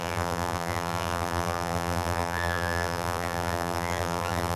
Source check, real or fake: fake